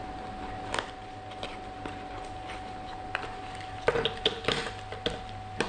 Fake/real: real